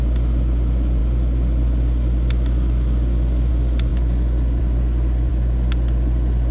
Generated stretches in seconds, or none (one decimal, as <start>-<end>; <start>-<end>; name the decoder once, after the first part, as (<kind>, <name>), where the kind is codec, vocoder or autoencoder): none